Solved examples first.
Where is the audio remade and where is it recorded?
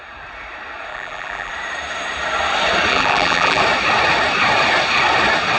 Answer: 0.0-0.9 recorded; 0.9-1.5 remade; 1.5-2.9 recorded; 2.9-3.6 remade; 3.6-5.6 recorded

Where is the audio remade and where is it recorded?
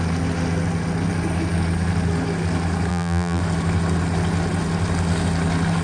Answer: 0.0-2.9 recorded; 2.9-3.4 remade; 3.4-5.8 recorded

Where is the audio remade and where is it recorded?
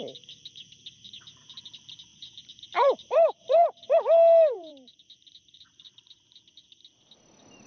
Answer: 0.0-2.1 recorded; 2.1-6.4 remade; 6.4-7.7 recorded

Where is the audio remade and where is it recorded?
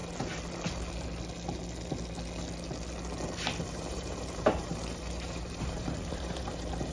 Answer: 0.0-3.6 recorded; 3.6-6.9 remade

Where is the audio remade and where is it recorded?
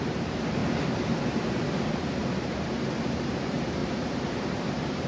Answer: 0.0-0.6 remade; 0.6-1.8 recorded; 1.8-5.1 remade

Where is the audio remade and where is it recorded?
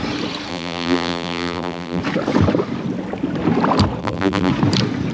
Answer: 0.0-0.5 recorded; 0.5-2.0 remade; 2.0-4.0 recorded; 4.0-4.5 remade; 4.5-5.1 recorded